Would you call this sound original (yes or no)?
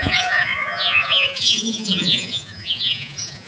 no